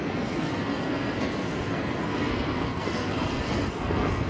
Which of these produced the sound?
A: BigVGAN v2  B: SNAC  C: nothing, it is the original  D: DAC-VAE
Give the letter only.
B